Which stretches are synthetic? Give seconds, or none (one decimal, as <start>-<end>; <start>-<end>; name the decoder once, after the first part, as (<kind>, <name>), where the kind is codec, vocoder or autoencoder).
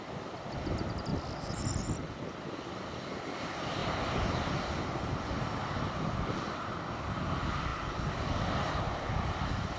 1.1-3.4 (vocoder, BigVGAN v2); 3.8-4.5